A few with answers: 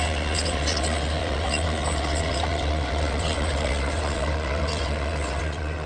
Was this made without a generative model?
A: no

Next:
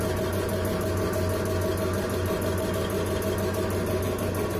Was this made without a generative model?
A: yes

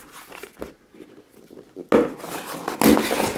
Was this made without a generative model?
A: yes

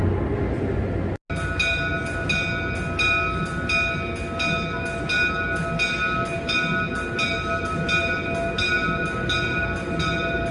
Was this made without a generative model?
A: yes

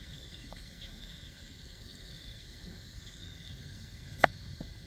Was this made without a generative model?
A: no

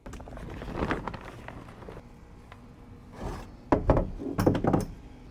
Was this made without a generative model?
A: yes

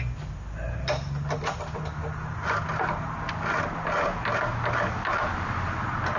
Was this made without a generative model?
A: yes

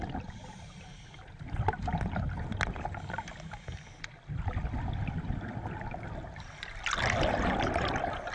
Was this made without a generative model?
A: yes